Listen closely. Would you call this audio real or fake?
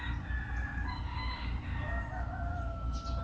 real